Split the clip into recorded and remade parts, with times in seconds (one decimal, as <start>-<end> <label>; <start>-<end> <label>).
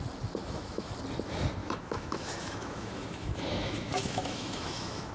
0.0-0.4 recorded; 0.4-0.9 remade; 0.9-1.6 recorded; 1.6-5.1 remade